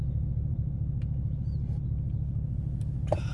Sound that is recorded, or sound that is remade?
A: recorded